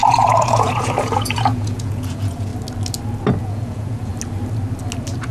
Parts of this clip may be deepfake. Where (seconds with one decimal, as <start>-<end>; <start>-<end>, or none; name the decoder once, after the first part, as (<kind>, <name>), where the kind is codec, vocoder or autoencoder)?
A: 0.0-2.5 (vocoder, Vocos); 3.4-4.1